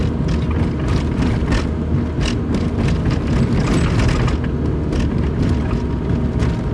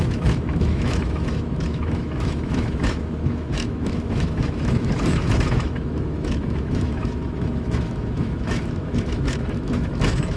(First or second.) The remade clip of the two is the second